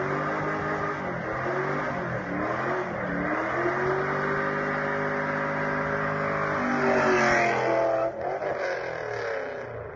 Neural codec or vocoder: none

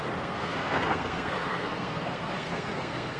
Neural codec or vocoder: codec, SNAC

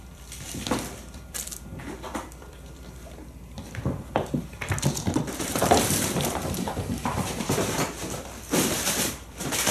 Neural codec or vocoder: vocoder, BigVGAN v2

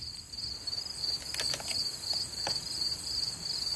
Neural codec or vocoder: none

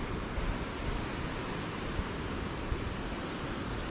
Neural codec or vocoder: none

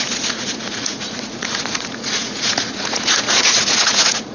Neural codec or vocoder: vocoder, Vocos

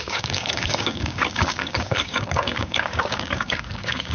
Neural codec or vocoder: codec, DAC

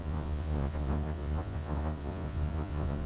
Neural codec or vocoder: vocoder, Vocos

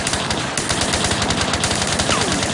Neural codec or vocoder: none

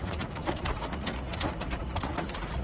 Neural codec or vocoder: vocoder, Vocos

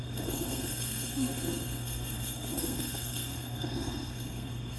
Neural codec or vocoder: codec, SNAC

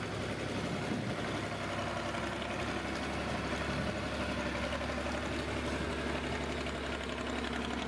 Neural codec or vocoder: none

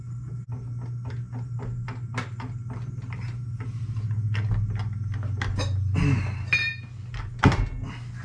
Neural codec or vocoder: none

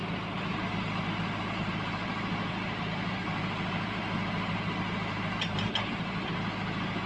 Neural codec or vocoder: none